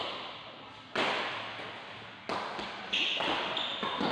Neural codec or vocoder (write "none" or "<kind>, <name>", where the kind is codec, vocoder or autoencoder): none